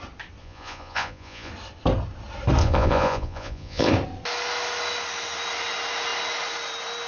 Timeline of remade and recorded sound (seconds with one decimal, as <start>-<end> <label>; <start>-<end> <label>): 0.0-0.4 recorded; 0.4-1.5 remade; 1.5-2.6 recorded; 2.6-3.9 remade; 3.9-7.1 recorded